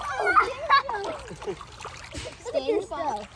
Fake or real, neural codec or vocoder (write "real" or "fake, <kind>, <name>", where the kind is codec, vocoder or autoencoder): real